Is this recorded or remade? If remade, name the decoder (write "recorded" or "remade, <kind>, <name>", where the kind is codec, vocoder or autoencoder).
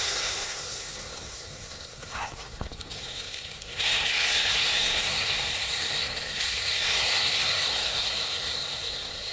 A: remade, codec, SNAC